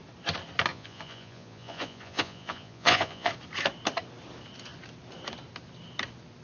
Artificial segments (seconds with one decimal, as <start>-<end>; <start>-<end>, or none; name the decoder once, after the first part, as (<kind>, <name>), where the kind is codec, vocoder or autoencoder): 0.7-3.3 (vocoder, Vocos)

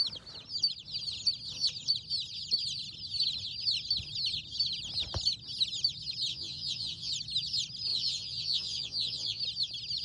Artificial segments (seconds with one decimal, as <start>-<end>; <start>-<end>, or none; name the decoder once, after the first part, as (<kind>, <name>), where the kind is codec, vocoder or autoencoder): 6.3-7.1 (vocoder, Vocos); 7.9-9.4

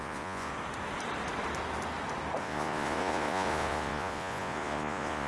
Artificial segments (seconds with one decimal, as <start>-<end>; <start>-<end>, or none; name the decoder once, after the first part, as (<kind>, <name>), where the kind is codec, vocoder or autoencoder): 0.0-0.5 (vocoder, Vocos); 2.4-5.3